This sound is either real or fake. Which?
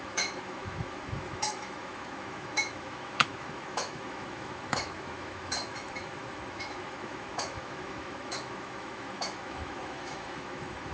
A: fake